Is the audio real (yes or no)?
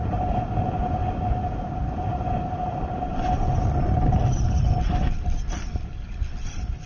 yes